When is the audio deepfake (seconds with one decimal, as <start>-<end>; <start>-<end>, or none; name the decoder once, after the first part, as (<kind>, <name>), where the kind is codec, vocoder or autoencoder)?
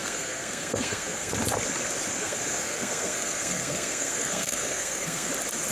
0.0-1.3 (codec, SNAC); 2.2-5.3